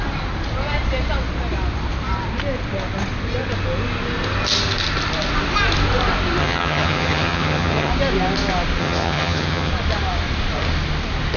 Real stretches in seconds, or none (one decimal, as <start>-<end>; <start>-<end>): 0.0-6.4; 7.9-8.8; 9.7-11.4